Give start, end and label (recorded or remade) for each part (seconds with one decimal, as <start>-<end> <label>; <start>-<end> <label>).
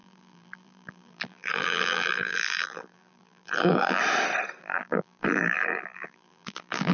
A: 0.0-4.0 remade; 4.0-4.6 recorded; 4.6-6.9 remade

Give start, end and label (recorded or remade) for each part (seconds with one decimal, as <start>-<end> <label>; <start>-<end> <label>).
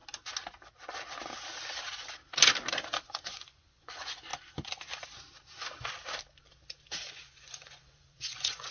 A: 0.0-2.7 recorded; 2.7-4.3 remade; 4.3-7.1 recorded; 7.1-8.7 remade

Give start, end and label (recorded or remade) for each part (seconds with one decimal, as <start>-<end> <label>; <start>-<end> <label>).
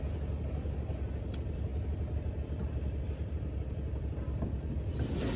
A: 0.0-5.4 recorded